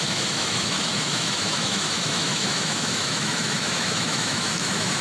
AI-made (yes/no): yes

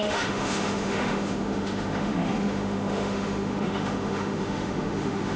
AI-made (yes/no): yes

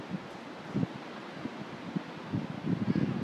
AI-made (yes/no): no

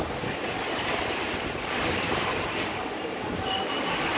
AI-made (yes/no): no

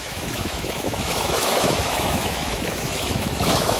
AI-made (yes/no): yes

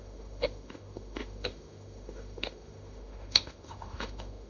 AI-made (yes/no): yes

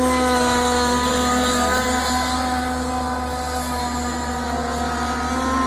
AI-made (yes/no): no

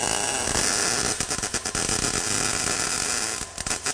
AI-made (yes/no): no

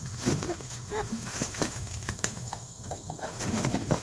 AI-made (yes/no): yes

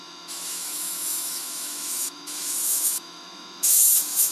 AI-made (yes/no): yes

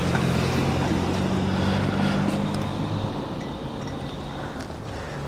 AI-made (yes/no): no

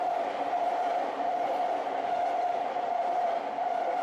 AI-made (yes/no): no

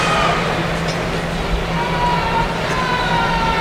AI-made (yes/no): no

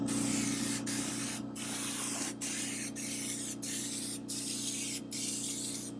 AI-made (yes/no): no